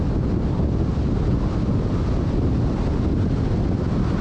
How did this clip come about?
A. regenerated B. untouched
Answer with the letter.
B